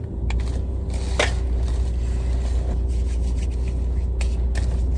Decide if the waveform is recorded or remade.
recorded